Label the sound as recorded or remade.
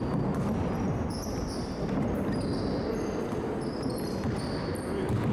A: recorded